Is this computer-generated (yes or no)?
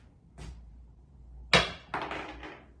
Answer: no